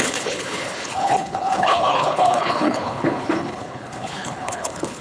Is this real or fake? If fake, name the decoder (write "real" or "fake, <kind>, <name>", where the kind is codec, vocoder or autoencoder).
fake, codec, HILCodec